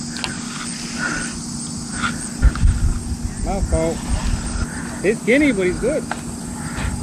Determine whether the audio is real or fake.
real